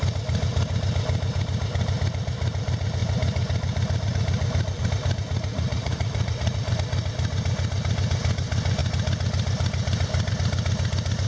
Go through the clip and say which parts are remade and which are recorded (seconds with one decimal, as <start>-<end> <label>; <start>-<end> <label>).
0.0-5.5 recorded; 5.5-6.7 remade; 6.7-11.3 recorded